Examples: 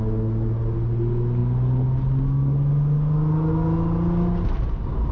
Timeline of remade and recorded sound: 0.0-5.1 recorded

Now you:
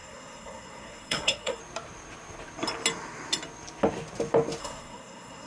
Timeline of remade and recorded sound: 0.0-1.6 remade; 1.6-4.6 recorded; 4.6-5.5 remade

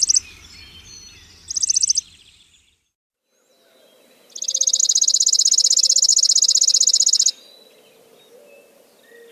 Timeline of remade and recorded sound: 0.0-9.3 recorded

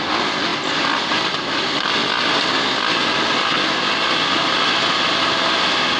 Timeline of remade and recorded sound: 0.0-6.0 recorded

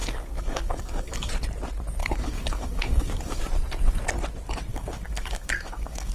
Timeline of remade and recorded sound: 0.0-1.3 remade; 1.3-2.0 recorded; 2.0-3.4 remade; 3.4-4.7 recorded; 4.7-6.1 remade

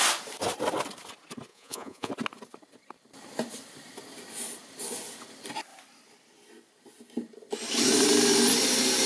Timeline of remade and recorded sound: 0.0-1.5 recorded; 1.5-2.1 remade; 2.1-9.1 recorded

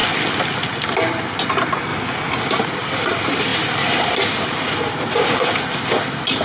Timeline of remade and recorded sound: 0.0-1.2 recorded; 1.2-1.9 remade; 1.9-2.5 recorded; 2.5-6.4 remade

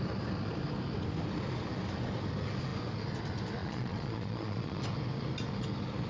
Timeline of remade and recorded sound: 0.0-3.6 recorded; 3.6-4.8 remade; 4.8-6.1 recorded